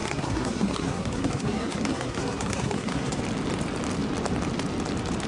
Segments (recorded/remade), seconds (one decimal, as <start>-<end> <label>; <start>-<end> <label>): 0.0-3.2 remade; 3.2-5.3 recorded